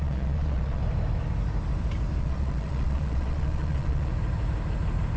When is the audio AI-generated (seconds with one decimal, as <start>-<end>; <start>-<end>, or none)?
0.0-0.8; 2.2-4.1